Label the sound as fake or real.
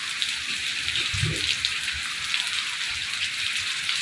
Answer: real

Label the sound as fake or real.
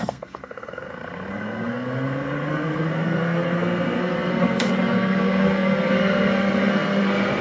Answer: fake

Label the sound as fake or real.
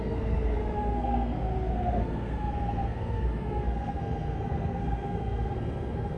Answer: fake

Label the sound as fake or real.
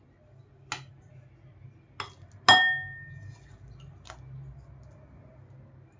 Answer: real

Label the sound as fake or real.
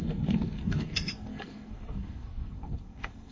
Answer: fake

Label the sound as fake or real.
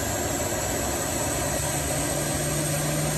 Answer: real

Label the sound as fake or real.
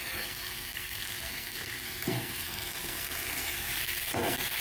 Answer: fake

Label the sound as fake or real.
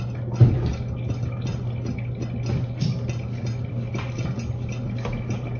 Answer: real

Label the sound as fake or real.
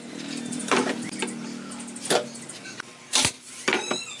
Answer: real